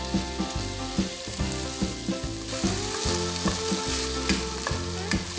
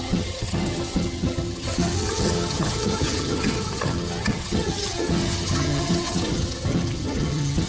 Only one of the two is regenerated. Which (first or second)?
second